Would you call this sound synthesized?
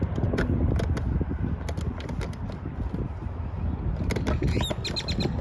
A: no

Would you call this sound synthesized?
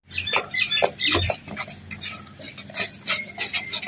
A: no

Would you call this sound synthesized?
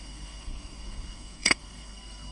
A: yes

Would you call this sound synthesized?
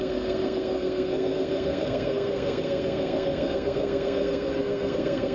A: yes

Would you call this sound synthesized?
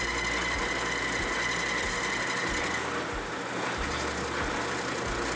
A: no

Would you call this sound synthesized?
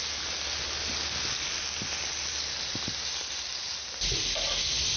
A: no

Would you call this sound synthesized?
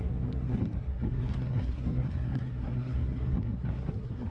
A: yes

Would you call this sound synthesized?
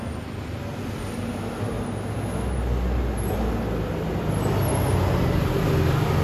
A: no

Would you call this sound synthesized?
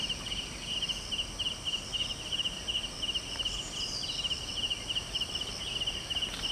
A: no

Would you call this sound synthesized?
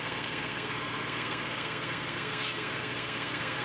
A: yes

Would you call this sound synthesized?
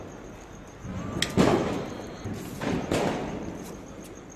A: no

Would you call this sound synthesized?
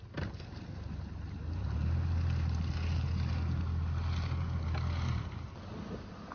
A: no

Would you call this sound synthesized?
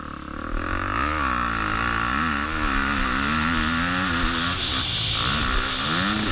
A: no